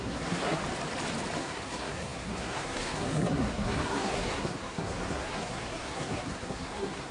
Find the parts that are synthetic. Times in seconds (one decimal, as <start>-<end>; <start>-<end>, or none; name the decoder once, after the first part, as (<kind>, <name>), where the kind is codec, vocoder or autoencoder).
0.0-0.6 (codec, SNAC); 1.4-7.1